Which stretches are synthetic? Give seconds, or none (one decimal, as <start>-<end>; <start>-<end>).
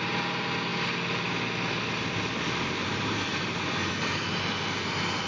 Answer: none